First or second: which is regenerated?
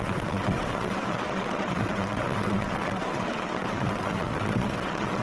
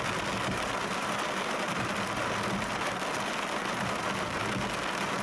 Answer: first